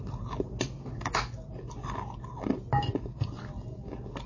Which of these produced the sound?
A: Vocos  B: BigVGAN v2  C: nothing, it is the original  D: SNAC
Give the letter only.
C